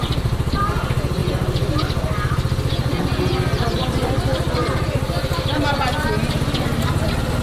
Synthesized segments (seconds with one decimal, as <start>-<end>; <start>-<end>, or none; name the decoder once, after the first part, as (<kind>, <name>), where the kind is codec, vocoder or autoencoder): none